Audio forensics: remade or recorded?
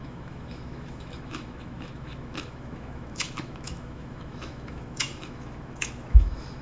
remade